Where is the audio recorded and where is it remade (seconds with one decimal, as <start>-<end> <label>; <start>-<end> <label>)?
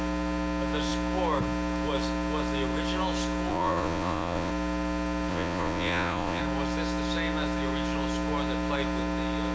0.0-3.5 recorded; 3.5-4.5 remade; 4.5-5.3 recorded; 5.3-6.4 remade; 6.4-9.5 recorded